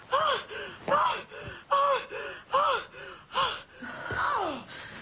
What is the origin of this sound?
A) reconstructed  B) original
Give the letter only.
B